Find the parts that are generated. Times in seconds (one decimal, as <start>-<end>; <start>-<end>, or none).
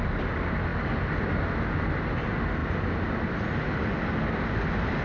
none